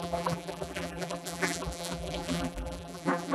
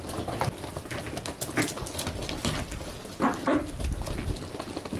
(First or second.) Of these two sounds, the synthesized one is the first